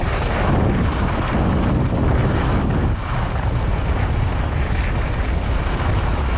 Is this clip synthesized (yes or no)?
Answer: no